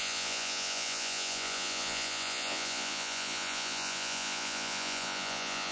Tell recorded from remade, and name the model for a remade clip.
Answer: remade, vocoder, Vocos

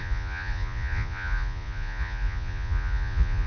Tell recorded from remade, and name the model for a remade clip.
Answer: remade, vocoder, Vocos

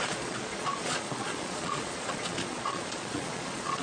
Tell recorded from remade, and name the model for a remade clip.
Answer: remade, vocoder, Vocos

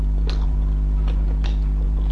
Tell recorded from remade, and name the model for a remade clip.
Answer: recorded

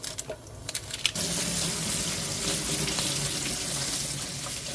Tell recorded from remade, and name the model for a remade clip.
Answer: recorded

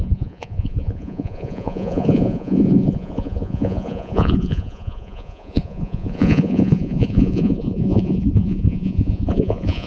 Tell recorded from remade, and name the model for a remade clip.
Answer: remade, vocoder, Vocos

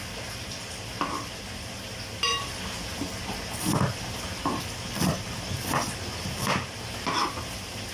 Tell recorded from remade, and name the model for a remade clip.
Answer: recorded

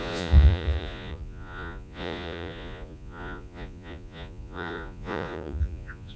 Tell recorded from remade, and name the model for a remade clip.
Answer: remade, vocoder, Vocos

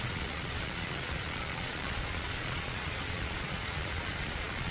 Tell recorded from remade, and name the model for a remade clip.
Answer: remade, vocoder, Vocos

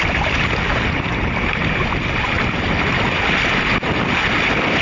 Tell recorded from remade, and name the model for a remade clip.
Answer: recorded